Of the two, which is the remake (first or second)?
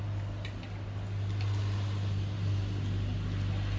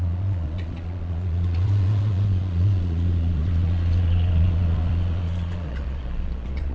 second